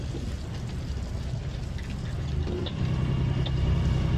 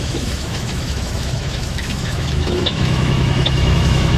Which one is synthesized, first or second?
second